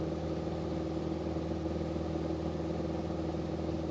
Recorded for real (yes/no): yes